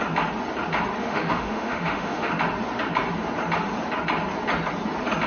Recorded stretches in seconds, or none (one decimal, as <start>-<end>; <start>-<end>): 0.0-1.0; 2.3-5.3

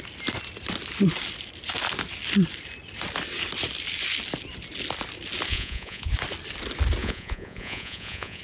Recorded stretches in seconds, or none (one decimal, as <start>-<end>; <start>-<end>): 0.0-5.5; 6.1-7.0

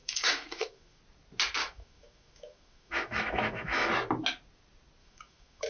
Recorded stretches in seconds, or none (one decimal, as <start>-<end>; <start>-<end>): 1.0-1.6; 3.9-5.0

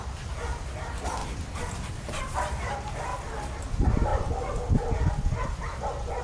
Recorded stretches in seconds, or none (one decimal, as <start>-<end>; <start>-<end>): 0.0-1.2; 2.7-6.2

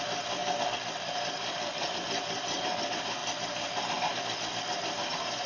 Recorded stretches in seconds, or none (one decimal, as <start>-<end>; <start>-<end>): 0.0-5.5

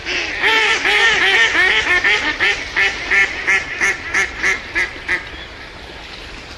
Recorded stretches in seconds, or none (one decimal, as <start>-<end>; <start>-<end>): 1.0-1.7

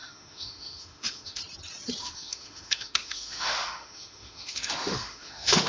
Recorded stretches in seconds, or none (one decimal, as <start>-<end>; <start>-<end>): 1.4-2.0